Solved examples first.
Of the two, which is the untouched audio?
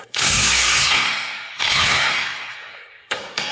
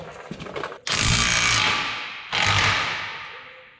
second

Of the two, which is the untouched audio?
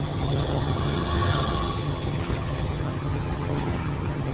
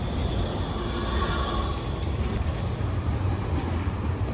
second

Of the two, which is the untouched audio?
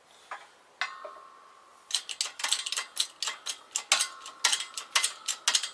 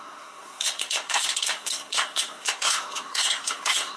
first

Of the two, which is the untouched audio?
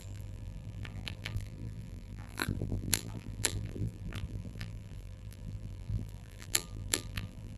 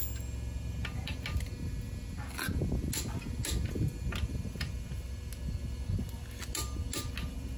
second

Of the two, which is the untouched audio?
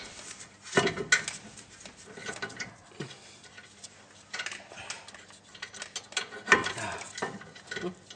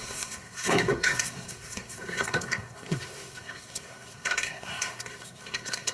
first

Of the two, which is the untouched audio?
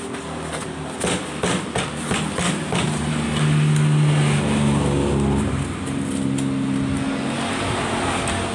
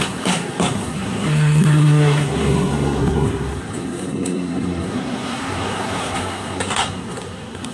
first